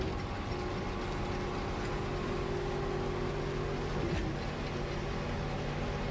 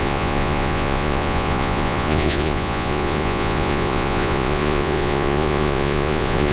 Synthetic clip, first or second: second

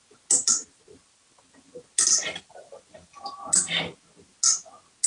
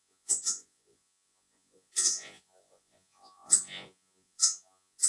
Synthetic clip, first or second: second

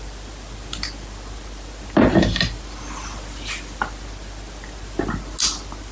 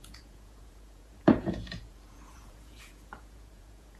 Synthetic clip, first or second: second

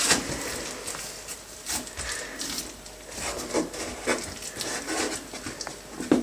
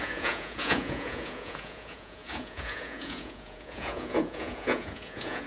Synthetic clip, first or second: second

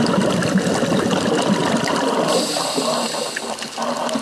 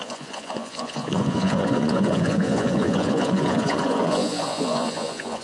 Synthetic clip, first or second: second